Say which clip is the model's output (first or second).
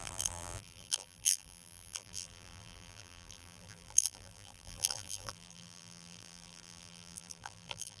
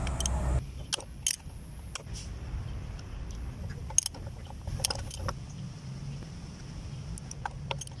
first